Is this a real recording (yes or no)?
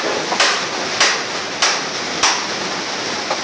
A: yes